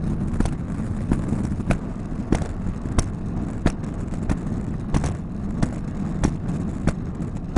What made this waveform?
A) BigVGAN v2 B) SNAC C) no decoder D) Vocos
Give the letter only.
C